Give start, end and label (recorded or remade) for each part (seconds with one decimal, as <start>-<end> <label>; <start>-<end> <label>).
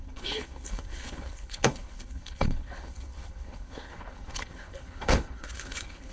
0.0-6.1 remade